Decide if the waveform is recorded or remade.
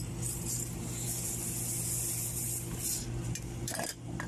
recorded